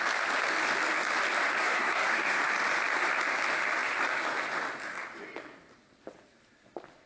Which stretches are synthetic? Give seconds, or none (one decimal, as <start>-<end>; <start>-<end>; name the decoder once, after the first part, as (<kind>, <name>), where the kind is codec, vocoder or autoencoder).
1.6-2.4 (codec, SNAC)

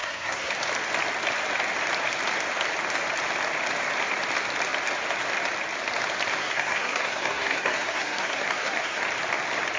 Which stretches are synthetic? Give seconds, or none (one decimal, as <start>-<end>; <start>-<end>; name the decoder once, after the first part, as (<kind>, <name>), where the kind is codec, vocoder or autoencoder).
0.0-0.5 (codec, SNAC); 6.4-9.0